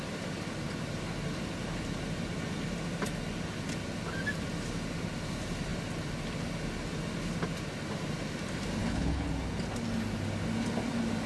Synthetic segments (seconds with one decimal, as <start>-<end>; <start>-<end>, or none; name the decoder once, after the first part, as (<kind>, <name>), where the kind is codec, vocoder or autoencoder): 8.8-9.3 (codec, HILCodec)